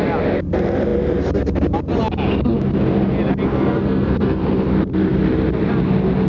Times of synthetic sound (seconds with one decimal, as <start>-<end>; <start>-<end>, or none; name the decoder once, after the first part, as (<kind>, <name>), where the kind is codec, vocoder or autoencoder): 3.5-4.4 (codec, SNAC)